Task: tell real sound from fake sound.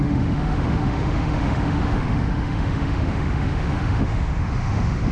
fake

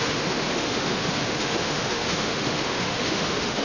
fake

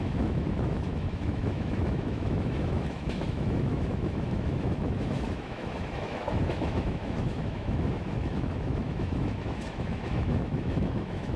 fake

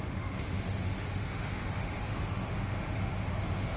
fake